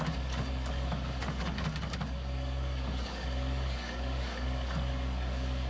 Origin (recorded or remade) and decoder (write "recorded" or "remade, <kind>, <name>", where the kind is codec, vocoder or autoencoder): remade, codec, DAC